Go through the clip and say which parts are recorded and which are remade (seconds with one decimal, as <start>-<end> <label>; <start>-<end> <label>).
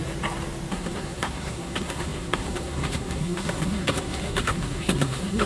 0.0-0.7 recorded; 0.7-5.5 remade